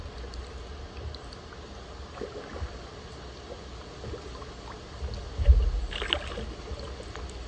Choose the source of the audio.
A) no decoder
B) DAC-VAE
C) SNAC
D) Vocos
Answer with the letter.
A